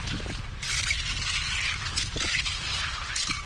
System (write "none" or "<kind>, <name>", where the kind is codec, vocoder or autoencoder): none